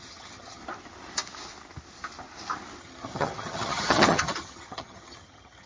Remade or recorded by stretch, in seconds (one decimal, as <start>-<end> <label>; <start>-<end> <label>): 0.0-0.6 remade; 0.6-2.8 recorded; 2.8-5.7 remade